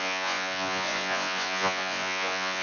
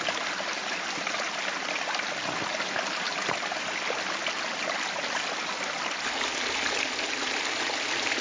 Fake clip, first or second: first